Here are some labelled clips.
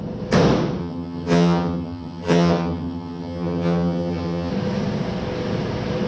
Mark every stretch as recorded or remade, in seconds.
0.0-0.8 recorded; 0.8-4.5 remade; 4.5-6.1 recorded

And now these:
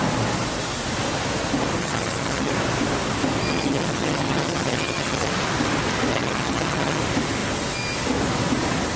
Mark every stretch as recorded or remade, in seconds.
0.0-1.8 recorded; 1.8-2.5 remade; 2.5-3.5 recorded; 3.5-5.3 remade; 5.3-6.1 recorded; 6.1-7.0 remade; 7.0-9.0 recorded

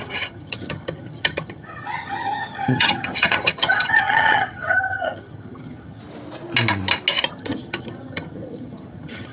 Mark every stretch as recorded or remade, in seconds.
0.0-6.0 remade; 6.0-7.3 recorded; 7.3-9.3 remade

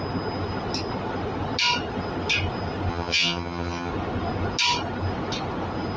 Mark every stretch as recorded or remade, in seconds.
0.0-2.9 recorded; 2.9-3.9 remade; 3.9-6.0 recorded

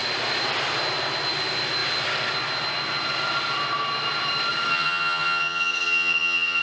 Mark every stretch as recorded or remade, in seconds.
0.0-4.7 recorded; 4.7-6.6 remade

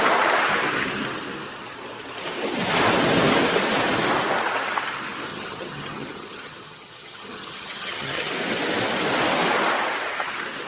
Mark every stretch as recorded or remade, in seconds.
0.0-5.3 recorded; 5.3-8.3 remade; 8.3-10.7 recorded

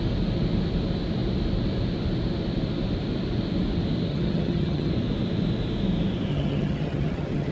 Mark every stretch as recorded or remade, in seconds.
0.0-4.1 recorded; 4.1-4.9 remade; 4.9-6.3 recorded; 6.3-7.5 remade

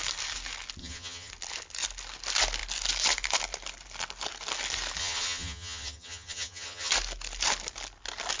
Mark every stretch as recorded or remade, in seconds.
0.0-0.8 recorded; 0.8-1.3 remade; 1.3-5.0 recorded; 5.0-6.9 remade; 6.9-8.4 recorded